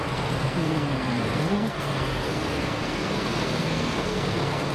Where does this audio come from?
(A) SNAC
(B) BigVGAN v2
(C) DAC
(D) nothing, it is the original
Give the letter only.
A